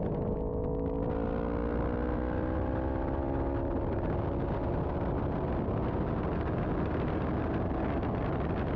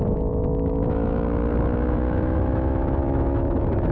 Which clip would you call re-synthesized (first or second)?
second